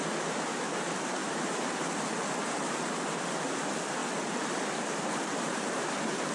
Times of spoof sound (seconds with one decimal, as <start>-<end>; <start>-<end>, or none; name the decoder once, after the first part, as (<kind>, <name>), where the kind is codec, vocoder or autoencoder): none